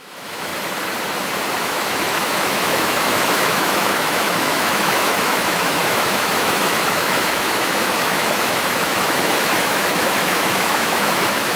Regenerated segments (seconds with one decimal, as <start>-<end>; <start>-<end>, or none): 0.0-0.5; 1.6-11.6